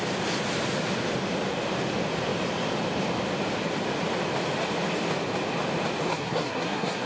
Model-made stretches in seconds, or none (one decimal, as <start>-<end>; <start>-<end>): 6.1-7.1